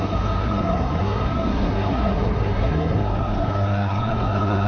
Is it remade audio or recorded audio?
remade